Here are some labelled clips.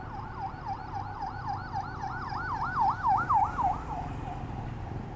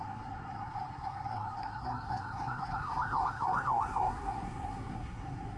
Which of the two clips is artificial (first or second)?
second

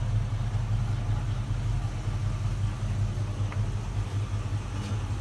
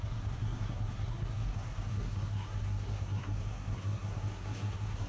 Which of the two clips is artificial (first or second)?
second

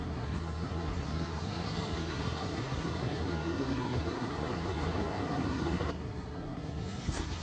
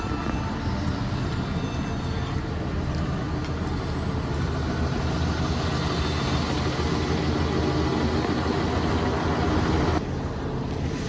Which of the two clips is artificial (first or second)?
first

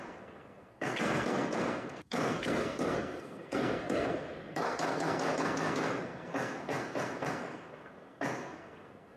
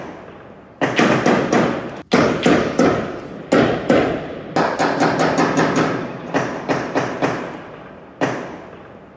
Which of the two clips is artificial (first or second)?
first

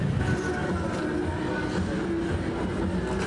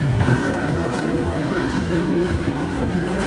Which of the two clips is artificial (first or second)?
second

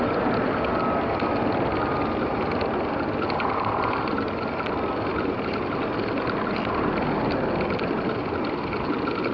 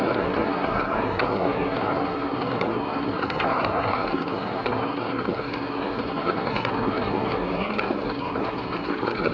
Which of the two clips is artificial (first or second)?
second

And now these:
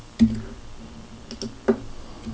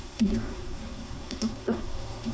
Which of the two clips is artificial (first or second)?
second